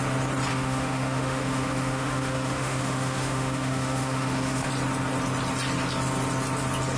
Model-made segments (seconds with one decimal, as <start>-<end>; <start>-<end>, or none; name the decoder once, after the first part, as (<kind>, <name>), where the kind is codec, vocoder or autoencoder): 0.5-4.7 (autoencoder, DAC-VAE)